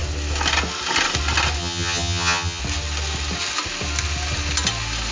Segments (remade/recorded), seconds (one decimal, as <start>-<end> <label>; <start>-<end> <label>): 0.0-1.6 recorded; 1.6-2.6 remade; 2.6-5.1 recorded